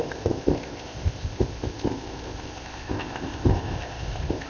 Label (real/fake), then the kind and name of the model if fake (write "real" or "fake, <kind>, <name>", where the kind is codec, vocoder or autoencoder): fake, codec, ZipCodec